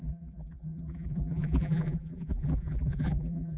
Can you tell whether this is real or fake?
fake